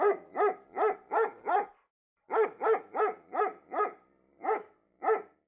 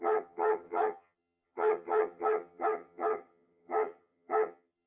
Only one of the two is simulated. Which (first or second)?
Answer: second